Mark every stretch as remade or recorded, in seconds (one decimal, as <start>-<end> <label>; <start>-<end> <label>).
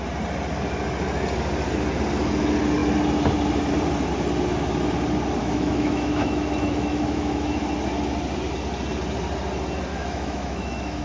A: 0.0-5.4 recorded; 5.4-7.6 remade; 7.6-9.9 recorded; 9.9-11.0 remade